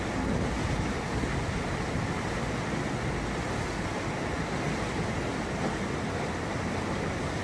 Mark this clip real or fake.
real